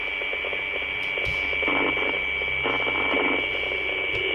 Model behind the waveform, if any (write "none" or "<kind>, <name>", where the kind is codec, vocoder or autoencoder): none